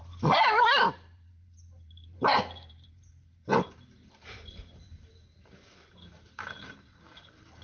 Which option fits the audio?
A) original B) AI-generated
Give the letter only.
B